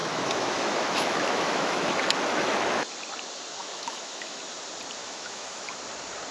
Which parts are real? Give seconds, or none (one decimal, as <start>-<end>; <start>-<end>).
2.9-3.6; 4.4-5.0; 5.8-6.3